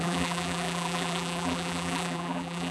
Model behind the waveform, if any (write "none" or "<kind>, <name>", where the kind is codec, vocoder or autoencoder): vocoder, BigVGAN v2